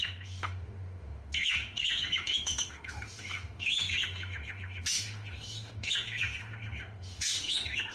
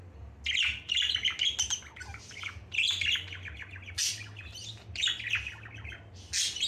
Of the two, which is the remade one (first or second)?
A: first